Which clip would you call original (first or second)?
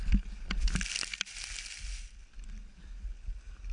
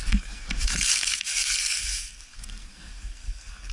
first